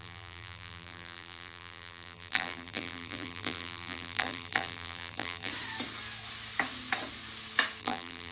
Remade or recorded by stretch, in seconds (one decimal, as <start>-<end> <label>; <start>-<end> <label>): 0.0-5.5 remade; 5.5-7.8 recorded; 7.8-8.3 remade